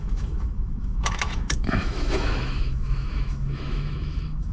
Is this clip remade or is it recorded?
remade